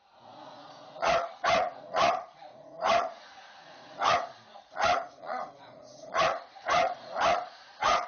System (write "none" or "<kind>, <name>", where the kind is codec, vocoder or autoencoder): vocoder, Vocos